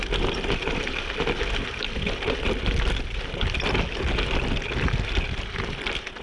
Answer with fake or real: real